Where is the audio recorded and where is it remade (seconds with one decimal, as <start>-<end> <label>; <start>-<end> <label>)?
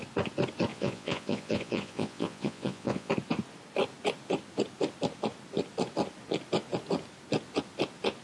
0.0-0.7 recorded; 0.7-3.1 remade; 3.1-8.2 recorded